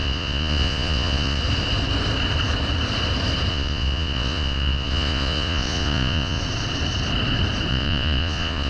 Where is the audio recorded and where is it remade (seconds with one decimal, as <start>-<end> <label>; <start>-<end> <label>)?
0.0-1.4 remade; 1.4-3.5 recorded; 3.5-6.4 remade; 6.4-7.7 recorded; 7.7-8.7 remade